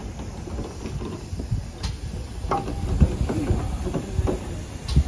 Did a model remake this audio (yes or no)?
no